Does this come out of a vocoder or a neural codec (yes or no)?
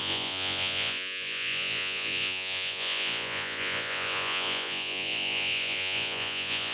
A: yes